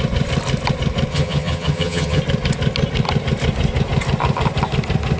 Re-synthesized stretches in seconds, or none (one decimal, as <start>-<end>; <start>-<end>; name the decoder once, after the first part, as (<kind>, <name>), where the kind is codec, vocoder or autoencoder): 1.1-2.2 (vocoder, HiFi-GAN)